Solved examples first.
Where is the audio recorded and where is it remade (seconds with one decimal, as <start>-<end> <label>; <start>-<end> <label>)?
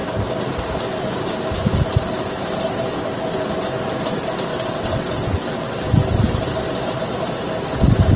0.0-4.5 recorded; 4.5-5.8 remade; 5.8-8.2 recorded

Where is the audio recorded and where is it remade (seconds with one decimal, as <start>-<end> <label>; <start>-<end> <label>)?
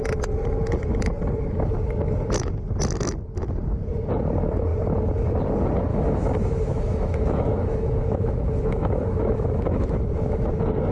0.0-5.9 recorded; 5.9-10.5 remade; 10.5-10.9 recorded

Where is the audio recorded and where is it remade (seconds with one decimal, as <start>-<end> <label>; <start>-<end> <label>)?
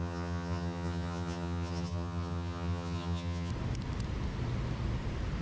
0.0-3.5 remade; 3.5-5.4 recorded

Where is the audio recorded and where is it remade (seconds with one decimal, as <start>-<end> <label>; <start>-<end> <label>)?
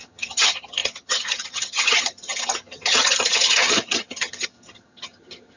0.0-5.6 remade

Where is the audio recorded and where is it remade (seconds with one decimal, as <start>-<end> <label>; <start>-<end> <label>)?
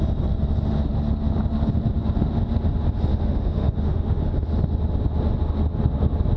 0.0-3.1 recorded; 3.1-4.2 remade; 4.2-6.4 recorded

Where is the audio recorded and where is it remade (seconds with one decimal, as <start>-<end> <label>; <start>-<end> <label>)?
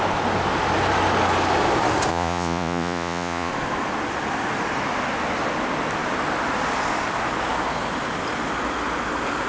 0.0-2.1 recorded; 2.1-3.5 remade; 3.5-9.5 recorded